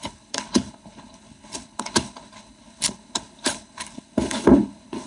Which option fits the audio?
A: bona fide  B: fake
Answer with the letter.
B